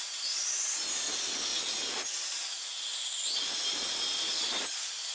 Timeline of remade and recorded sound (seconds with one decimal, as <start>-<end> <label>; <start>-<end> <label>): 0.0-5.1 recorded